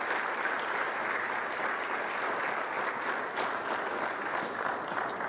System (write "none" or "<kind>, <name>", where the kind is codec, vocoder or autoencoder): none